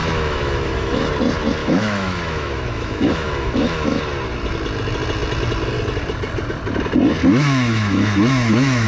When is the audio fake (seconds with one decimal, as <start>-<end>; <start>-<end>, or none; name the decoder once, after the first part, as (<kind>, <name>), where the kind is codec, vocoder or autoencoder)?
0.0-1.1 (autoencoder, DAC-VAE); 1.6-4.0; 7.3-8.9